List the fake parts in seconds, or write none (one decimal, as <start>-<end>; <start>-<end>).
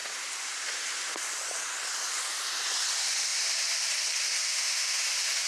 4.4-5.0